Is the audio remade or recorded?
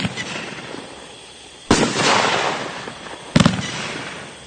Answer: recorded